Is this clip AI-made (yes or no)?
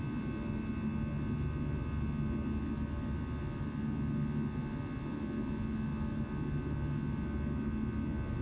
no